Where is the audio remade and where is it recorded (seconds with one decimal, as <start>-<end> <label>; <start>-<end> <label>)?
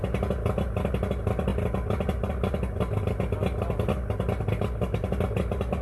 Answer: 0.0-5.8 recorded